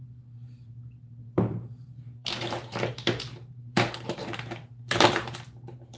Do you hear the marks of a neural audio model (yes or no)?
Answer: yes